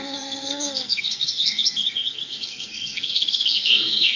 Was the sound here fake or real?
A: fake